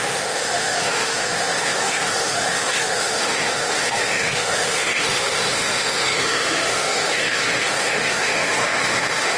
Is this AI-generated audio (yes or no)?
yes